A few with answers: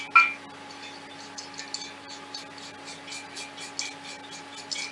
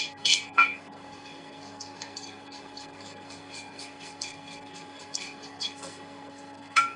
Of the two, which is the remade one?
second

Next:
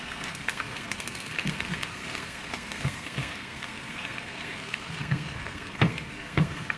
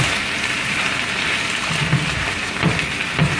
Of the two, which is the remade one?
first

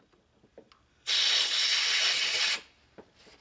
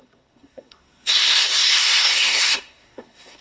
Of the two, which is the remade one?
second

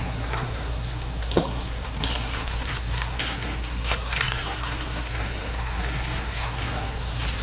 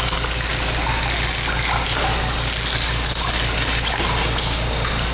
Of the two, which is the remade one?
first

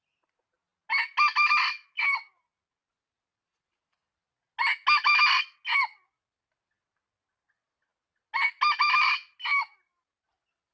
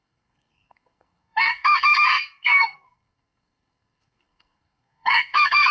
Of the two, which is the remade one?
second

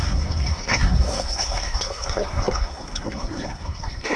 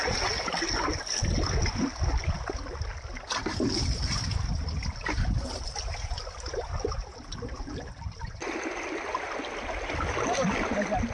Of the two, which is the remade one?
first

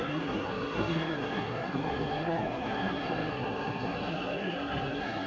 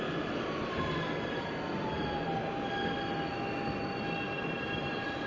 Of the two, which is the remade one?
first